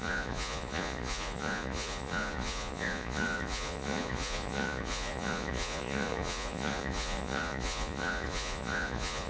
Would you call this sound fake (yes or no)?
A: yes